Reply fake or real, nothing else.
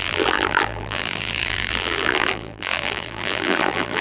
fake